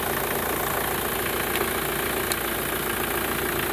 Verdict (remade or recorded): recorded